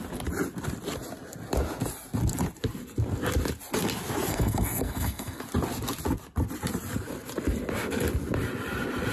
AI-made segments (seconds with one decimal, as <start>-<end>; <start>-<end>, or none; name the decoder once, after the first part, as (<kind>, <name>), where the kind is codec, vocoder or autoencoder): 4.3-5.4 (codec, SNAC)